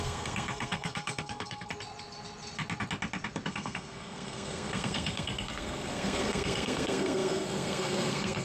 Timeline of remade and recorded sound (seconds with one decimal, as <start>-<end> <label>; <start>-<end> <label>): 0.0-1.7 remade; 1.7-3.5 recorded; 3.5-8.4 remade